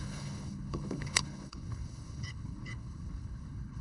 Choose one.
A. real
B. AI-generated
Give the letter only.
B